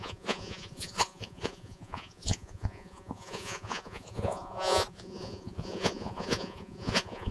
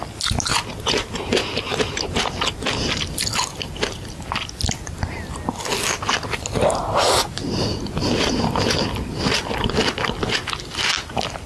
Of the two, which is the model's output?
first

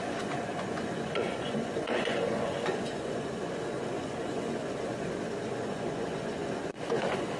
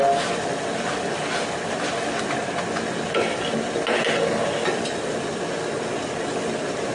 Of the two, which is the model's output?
first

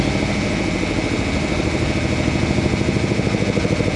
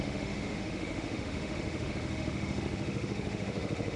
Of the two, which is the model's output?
second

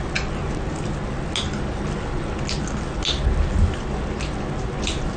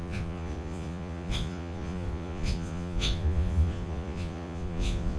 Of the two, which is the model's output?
second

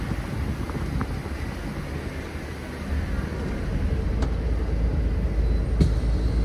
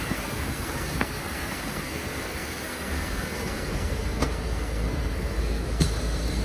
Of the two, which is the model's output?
second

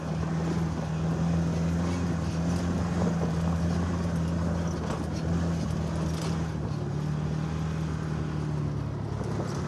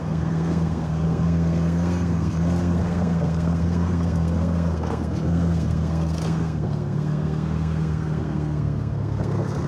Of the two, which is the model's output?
second